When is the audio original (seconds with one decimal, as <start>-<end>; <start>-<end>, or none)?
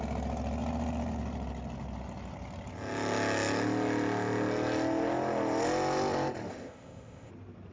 0.0-6.5; 7.3-7.7